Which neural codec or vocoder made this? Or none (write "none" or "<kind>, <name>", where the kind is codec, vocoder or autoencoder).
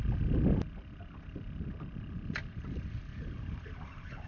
none